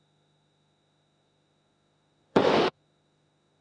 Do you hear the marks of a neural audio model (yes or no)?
yes